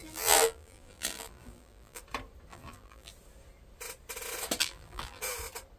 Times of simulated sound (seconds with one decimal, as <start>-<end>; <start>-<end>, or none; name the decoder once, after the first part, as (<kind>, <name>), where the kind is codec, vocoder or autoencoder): 0.0-2.0 (vocoder, BigVGAN v2); 2.5-3.1; 4.6-5.2